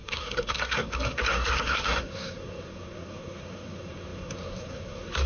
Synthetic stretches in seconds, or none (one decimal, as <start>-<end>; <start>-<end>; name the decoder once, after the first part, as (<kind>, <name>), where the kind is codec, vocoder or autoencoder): 0.0-5.3 (codec, SNAC)